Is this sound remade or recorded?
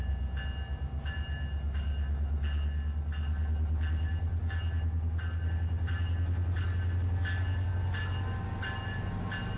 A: recorded